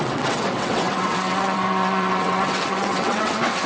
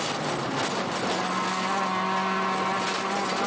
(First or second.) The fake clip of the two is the first